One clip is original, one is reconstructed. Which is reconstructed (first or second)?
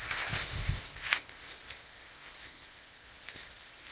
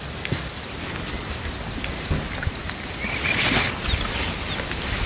first